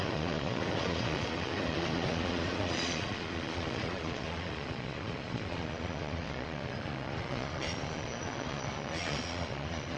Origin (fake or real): fake